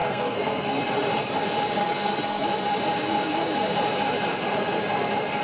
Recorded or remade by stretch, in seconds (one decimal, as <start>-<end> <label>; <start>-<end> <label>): 0.0-0.8 remade; 0.8-1.8 recorded; 1.8-2.4 remade; 2.4-5.4 recorded